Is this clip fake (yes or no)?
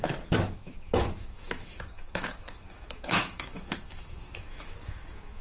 yes